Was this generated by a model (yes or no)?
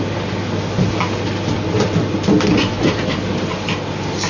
no